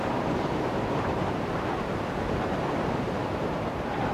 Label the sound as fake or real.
fake